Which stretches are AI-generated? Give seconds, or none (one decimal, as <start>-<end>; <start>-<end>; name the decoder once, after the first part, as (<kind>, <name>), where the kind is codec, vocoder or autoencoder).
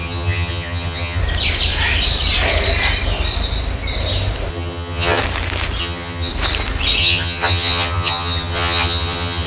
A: 0.0-1.2 (vocoder, HiFi-GAN); 4.5-5.2; 5.8-6.3; 7.0-9.5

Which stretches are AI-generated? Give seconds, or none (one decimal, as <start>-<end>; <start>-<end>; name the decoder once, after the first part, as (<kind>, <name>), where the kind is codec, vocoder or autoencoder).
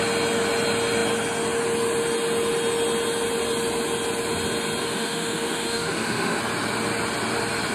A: 4.8-6.4 (autoencoder, DAC-VAE)